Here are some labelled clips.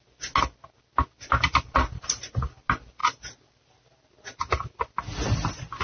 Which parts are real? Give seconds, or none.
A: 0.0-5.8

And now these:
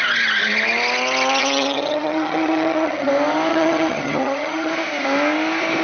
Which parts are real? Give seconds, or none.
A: 0.0-1.4; 3.1-3.5; 4.7-5.8